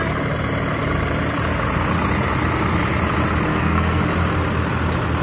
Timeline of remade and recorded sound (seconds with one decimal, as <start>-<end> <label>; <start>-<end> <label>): 0.0-3.5 recorded; 3.5-4.0 remade; 4.0-5.2 recorded